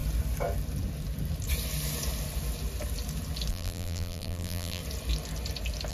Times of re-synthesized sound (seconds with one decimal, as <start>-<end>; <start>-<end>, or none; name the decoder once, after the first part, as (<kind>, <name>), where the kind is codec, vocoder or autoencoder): 3.5-4.8 (vocoder, BigVGAN v2)